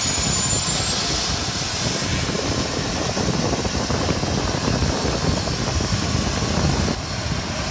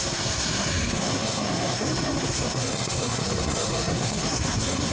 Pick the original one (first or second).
first